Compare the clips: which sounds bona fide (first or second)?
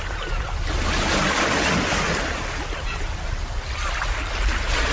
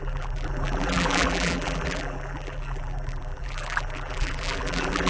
first